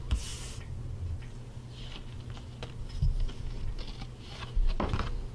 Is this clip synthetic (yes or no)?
no